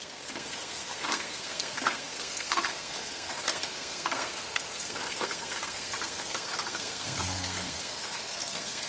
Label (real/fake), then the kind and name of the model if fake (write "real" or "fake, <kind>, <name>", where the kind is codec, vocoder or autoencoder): fake, codec, SNAC